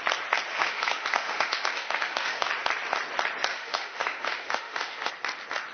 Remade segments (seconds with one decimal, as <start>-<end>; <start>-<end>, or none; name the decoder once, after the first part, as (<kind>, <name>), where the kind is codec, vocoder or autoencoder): 0.5-2.5 (autoencoder, DAC-VAE); 3.5-5.1